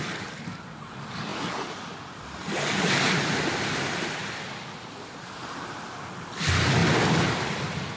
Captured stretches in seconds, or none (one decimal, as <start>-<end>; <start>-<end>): 0.0-8.0